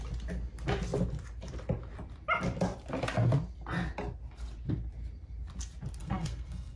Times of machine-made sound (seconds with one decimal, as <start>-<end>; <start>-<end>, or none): 6.0-6.8